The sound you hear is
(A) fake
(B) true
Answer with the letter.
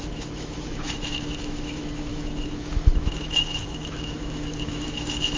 A